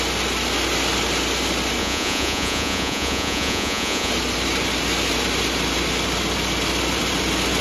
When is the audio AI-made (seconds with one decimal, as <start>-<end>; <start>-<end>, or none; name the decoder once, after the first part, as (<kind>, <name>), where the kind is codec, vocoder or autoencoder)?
1.8-4.1 (vocoder, Vocos)